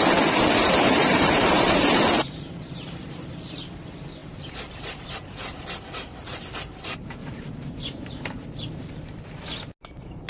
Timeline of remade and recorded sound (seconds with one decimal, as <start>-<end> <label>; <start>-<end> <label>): 0.0-0.6 recorded; 0.6-3.6 remade; 3.6-4.2 recorded; 4.2-8.3 remade; 8.3-10.3 recorded